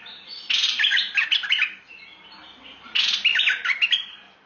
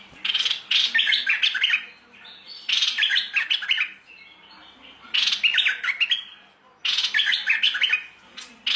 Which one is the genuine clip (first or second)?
second